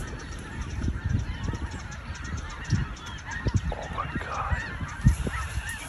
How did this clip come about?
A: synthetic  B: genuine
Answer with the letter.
B